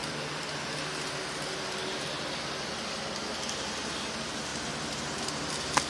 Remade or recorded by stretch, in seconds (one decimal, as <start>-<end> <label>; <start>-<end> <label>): 0.0-4.5 recorded; 4.5-5.5 remade; 5.5-5.9 recorded